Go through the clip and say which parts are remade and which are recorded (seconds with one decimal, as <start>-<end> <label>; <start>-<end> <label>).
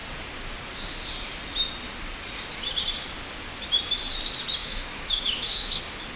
0.0-4.6 recorded; 4.6-5.8 remade; 5.8-6.2 recorded